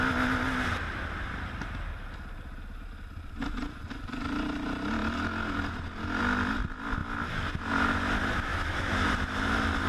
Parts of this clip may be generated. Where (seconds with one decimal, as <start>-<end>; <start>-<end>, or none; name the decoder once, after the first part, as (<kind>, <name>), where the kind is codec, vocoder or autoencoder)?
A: 8.5-9.1 (autoencoder, DAC-VAE)

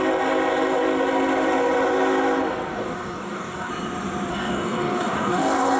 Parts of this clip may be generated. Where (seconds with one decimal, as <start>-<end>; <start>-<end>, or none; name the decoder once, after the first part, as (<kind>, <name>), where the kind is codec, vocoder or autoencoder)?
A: 2.7-3.7 (codec, DAC); 4.3-5.8

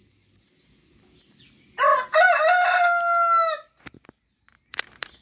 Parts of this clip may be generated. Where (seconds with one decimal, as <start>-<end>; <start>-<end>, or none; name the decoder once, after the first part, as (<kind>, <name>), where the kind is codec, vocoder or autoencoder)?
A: none

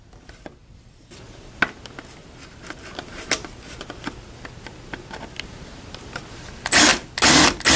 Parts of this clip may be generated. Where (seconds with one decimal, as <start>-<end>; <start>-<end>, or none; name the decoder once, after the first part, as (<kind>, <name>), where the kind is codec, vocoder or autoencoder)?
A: none

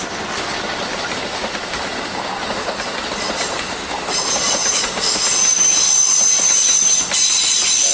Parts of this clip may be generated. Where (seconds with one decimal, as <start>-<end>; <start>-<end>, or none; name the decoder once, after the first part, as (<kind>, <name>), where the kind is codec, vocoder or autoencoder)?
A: none